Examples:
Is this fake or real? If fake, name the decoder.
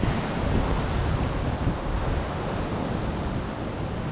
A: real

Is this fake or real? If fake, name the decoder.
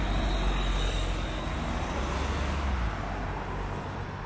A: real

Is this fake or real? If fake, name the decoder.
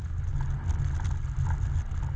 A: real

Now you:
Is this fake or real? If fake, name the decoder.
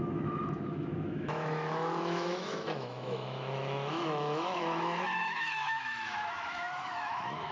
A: fake, autoencoder, DAC-VAE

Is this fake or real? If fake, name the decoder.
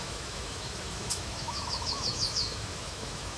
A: fake, autoencoder, DAC-VAE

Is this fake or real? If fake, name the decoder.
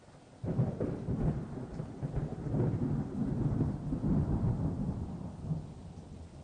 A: real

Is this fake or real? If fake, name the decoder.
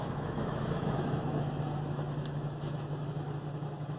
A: fake, autoencoder, DAC-VAE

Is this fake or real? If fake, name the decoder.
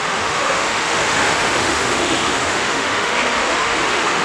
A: fake, autoencoder, DAC-VAE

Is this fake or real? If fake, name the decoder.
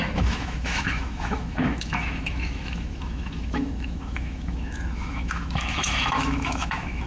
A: fake, autoencoder, DAC-VAE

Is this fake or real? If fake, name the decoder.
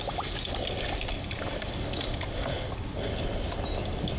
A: real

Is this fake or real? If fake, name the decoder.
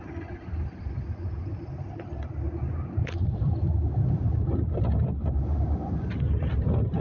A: real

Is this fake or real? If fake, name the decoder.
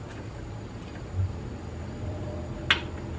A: real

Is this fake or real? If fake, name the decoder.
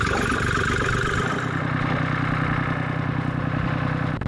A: real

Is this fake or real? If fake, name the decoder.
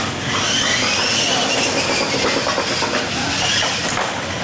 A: real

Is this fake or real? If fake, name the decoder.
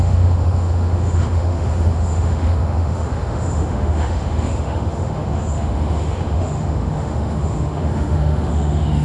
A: fake, autoencoder, DAC-VAE